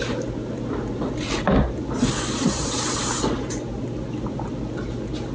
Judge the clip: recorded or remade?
recorded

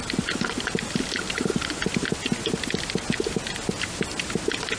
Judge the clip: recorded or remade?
recorded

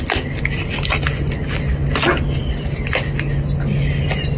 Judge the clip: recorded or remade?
recorded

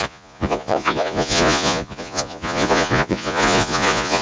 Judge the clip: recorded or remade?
remade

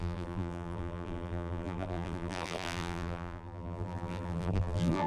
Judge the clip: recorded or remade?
remade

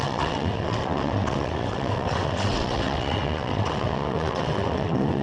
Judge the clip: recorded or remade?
remade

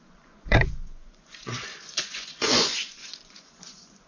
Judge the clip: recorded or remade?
remade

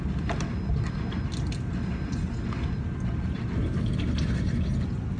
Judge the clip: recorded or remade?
recorded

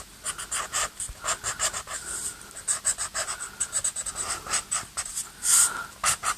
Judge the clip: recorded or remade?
recorded